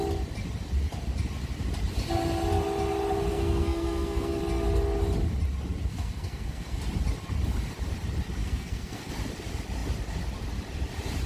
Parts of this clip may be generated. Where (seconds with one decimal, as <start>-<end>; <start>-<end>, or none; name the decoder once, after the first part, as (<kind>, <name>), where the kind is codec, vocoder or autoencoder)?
3.3-4.4 (codec, SNAC); 5.9-6.8; 8.4-9.1